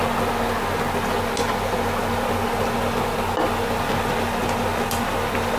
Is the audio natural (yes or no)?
yes